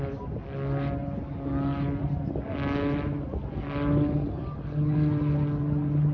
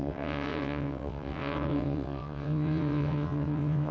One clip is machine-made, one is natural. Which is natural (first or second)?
first